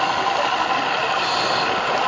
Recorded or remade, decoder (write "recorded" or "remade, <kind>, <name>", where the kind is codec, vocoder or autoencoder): recorded